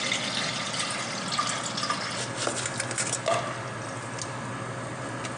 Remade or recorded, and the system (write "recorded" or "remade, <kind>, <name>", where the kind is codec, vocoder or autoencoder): recorded